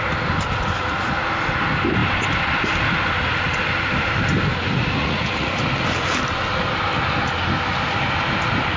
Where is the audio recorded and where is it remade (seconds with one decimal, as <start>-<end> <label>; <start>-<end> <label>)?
0.0-5.0 recorded; 5.0-5.6 remade; 5.6-8.8 recorded